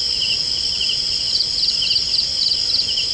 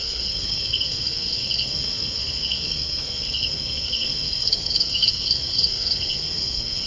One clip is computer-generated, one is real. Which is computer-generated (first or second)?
second